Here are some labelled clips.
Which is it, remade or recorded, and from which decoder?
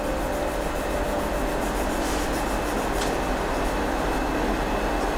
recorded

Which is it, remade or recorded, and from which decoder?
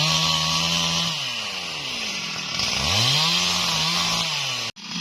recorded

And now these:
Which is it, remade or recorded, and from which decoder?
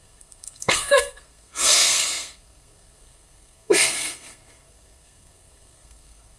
remade, codec, SNAC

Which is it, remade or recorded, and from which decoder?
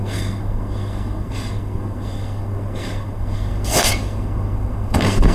remade, codec, SNAC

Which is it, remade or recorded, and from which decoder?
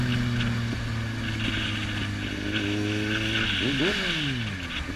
recorded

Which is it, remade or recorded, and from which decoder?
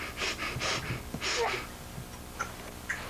recorded